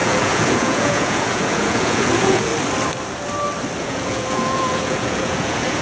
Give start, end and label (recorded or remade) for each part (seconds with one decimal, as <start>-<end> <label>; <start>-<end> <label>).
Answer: 0.0-2.5 remade; 2.5-3.8 recorded; 3.8-5.8 remade